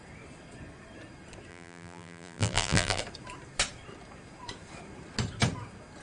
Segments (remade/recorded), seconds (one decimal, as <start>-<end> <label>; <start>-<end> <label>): 0.0-1.5 recorded; 1.5-3.0 remade; 3.0-6.0 recorded

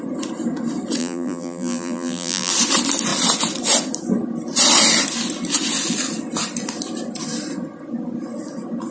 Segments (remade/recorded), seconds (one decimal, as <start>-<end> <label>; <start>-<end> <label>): 0.0-1.0 recorded; 1.0-2.5 remade; 2.5-8.9 recorded